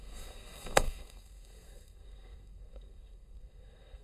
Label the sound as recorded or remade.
remade